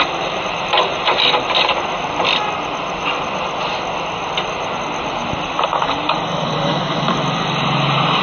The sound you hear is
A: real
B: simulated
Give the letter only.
A